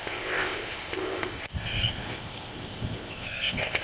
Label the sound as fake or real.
fake